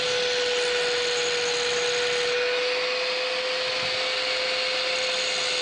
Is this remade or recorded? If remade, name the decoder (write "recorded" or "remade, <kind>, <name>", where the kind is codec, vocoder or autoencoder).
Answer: recorded